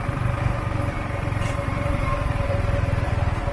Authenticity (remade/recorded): remade